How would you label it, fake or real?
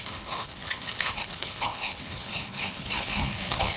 fake